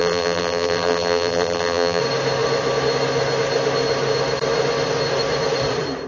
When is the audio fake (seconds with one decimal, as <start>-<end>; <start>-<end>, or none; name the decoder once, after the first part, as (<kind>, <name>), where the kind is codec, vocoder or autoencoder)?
0.0-2.0 (vocoder, BigVGAN v2)